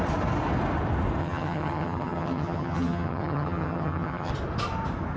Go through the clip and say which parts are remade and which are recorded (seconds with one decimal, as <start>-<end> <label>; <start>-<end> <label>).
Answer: 0.0-1.2 recorded; 1.2-4.3 remade; 4.3-5.2 recorded

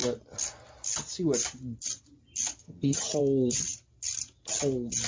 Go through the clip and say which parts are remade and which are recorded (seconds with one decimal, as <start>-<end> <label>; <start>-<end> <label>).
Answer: 0.0-2.6 recorded; 2.6-3.2 remade; 3.2-5.1 recorded

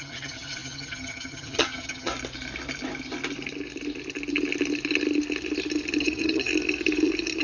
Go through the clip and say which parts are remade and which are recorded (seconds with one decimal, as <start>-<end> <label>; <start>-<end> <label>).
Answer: 0.0-2.1 remade; 2.1-6.0 recorded; 6.0-6.5 remade; 6.5-7.4 recorded